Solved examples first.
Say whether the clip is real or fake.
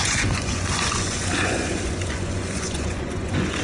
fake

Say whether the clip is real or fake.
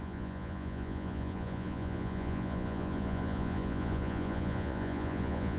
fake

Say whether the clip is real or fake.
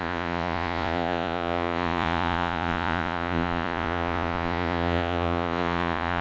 fake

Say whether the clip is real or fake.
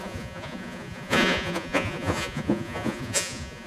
fake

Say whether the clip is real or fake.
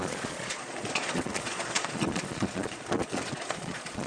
fake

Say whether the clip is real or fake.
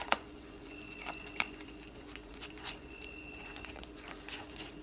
fake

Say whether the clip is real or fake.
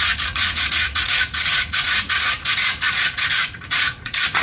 fake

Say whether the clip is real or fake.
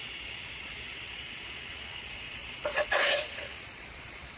fake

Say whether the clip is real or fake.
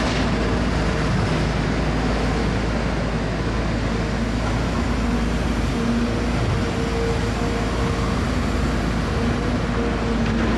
real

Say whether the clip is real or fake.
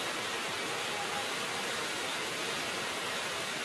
real